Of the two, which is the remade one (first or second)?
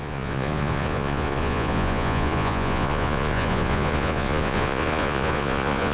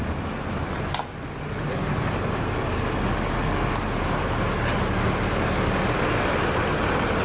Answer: first